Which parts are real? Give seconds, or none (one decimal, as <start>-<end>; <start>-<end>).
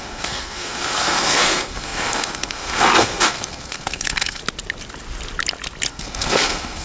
4.4-5.9